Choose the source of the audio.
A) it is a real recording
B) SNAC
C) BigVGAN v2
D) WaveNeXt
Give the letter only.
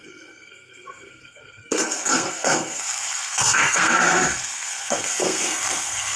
B